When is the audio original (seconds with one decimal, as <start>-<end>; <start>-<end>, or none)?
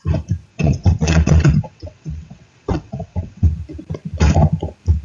0.0-0.5; 3.5-5.0